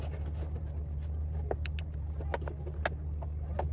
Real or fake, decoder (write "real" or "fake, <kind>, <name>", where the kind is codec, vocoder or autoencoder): real